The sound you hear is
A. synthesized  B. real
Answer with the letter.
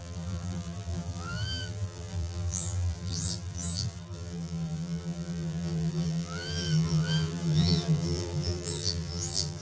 A